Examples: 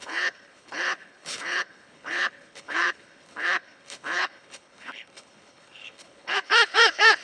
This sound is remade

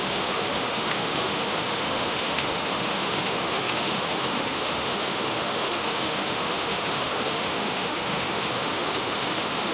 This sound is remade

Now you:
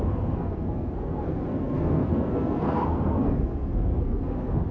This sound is remade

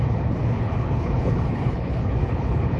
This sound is remade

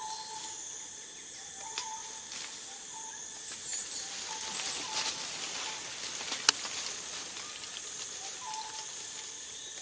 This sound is recorded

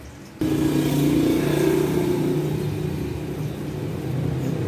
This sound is recorded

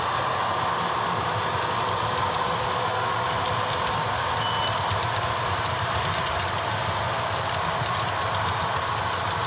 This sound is recorded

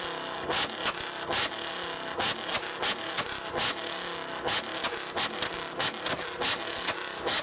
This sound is recorded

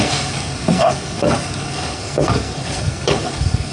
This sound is remade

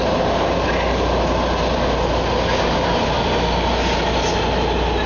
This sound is recorded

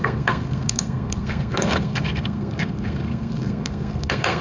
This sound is remade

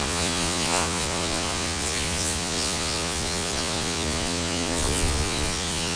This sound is remade